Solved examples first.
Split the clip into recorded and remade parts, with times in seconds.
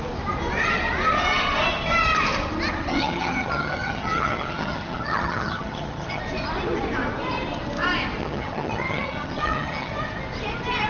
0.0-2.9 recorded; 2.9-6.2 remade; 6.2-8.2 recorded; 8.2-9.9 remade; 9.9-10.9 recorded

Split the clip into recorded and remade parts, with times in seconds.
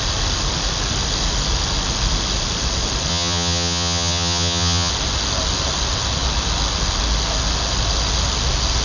0.0-3.1 recorded; 3.1-4.9 remade; 4.9-8.8 recorded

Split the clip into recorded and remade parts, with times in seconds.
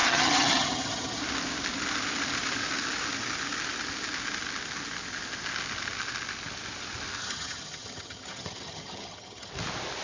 0.0-1.2 remade; 1.2-7.2 recorded; 7.2-9.5 remade; 9.5-10.0 recorded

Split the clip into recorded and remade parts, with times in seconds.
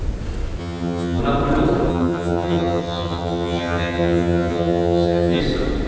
0.0-0.6 recorded; 0.6-1.2 remade; 1.2-1.9 recorded; 1.9-5.4 remade; 5.4-5.9 recorded